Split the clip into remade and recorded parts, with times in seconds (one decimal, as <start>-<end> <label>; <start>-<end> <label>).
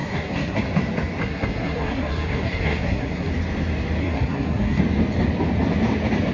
0.0-0.6 remade; 0.6-1.2 recorded; 1.2-3.3 remade; 3.3-4.0 recorded; 4.0-4.8 remade; 4.8-6.3 recorded